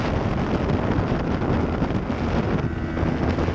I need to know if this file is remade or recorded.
recorded